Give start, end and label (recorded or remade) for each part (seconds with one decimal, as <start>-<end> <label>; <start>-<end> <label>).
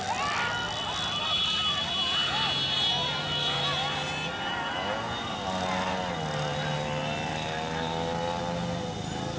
0.0-9.4 recorded